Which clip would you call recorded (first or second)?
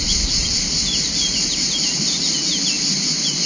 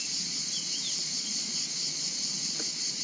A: first